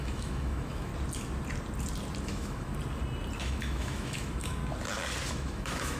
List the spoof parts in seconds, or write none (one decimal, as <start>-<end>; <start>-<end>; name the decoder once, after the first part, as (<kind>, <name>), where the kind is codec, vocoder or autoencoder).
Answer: 0.0-0.9 (autoencoder, DAC-VAE); 2.2-2.7; 3.4-4.6; 5.3-6.0